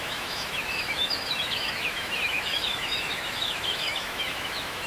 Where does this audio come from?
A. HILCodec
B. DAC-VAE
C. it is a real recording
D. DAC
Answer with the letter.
B